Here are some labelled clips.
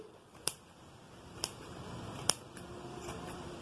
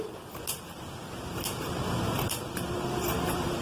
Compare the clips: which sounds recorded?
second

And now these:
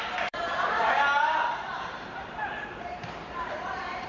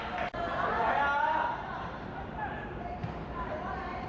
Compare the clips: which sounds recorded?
second